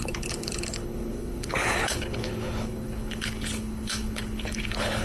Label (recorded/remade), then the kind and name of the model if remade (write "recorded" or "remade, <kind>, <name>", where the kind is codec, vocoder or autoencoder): remade, codec, HILCodec